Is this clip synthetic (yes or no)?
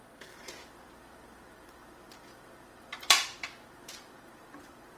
yes